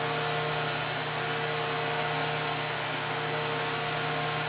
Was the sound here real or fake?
real